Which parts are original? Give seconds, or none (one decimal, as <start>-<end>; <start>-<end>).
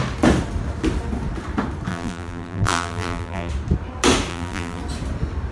0.0-1.9; 3.5-4.3; 4.8-5.5